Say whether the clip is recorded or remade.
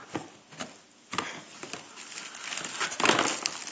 recorded